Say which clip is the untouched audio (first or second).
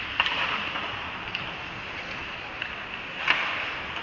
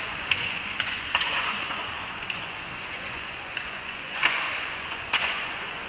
first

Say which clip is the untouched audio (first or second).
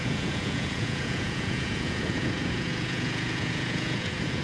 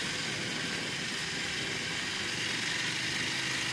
second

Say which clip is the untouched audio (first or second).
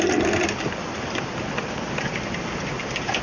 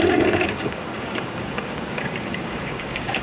first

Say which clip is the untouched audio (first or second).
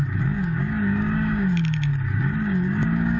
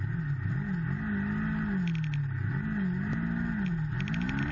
second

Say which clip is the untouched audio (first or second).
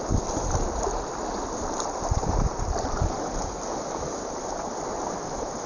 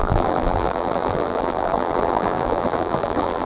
first